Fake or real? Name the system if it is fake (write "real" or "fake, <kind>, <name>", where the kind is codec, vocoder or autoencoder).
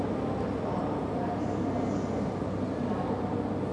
real